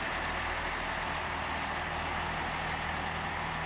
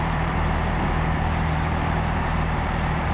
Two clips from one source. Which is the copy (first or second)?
second